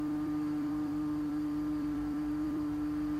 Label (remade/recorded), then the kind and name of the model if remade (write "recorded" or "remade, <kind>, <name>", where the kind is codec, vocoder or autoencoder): remade, vocoder, BigVGAN v2